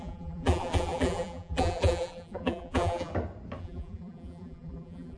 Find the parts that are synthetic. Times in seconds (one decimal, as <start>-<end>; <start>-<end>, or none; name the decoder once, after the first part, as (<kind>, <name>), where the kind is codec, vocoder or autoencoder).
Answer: 0.0-3.1 (vocoder, BigVGAN v2); 3.6-5.2